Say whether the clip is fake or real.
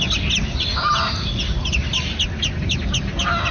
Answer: real